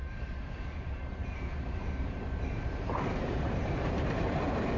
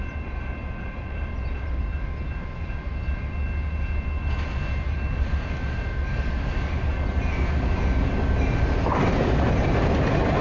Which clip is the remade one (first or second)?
first